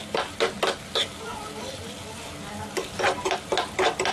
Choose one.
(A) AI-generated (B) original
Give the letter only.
B